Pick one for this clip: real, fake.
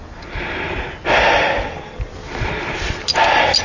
real